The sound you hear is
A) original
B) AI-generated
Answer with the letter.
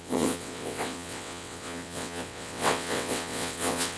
B